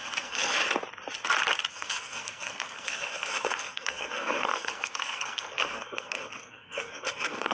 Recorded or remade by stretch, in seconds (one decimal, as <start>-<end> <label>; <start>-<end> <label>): 0.0-0.6 remade; 0.6-1.7 recorded; 1.7-7.5 remade